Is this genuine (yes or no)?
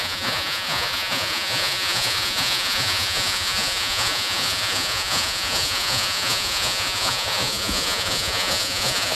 no